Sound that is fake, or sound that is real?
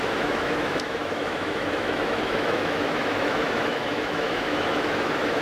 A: fake